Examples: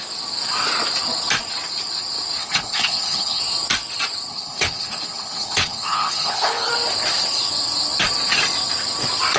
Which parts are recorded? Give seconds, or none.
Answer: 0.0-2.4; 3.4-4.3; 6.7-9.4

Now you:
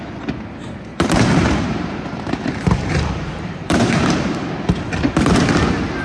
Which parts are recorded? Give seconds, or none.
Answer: 0.0-0.9; 4.5-6.0

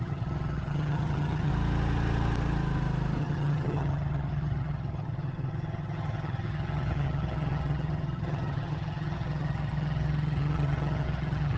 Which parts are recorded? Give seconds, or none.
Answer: 1.5-3.2

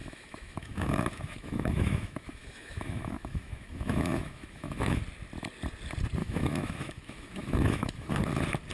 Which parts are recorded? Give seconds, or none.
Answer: 5.0-6.2; 8.1-8.7

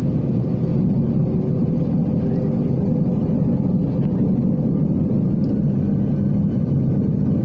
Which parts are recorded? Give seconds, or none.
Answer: 0.0-7.4

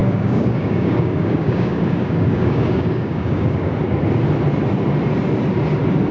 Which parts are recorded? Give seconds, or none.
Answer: 3.7-6.1